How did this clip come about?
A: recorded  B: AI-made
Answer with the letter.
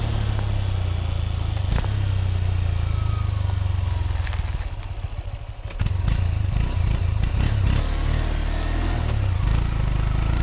A